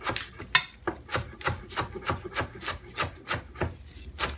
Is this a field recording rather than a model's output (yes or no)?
yes